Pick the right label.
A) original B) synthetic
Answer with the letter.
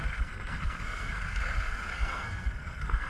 B